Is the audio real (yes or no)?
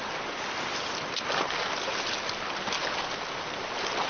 yes